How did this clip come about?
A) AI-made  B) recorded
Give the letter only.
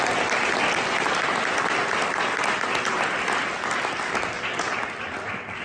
B